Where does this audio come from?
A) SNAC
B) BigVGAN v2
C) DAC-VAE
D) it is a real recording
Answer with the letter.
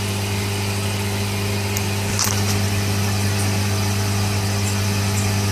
D